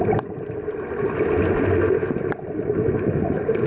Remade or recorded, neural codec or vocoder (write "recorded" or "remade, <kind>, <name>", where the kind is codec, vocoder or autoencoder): recorded